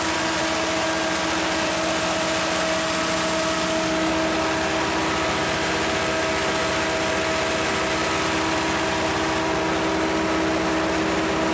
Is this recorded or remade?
recorded